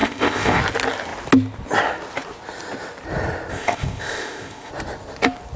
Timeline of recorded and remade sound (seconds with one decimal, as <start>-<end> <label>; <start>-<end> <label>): 0.0-0.6 remade; 0.6-3.5 recorded; 3.5-4.7 remade; 4.7-5.6 recorded